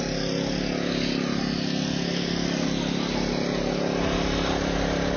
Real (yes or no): yes